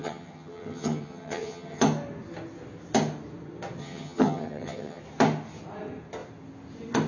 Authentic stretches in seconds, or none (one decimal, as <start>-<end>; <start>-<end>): 1.8-3.8; 5.0-7.1